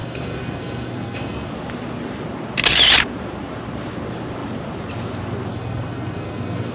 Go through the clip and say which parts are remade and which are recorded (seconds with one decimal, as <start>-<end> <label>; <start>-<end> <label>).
0.0-1.5 remade; 1.5-5.5 recorded; 5.5-6.7 remade